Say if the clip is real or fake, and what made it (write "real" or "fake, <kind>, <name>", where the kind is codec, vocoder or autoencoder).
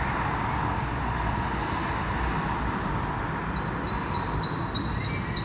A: real